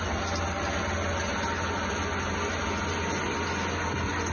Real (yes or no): yes